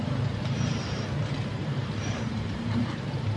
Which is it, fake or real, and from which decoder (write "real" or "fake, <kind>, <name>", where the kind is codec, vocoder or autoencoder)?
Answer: fake, vocoder, BigVGAN v2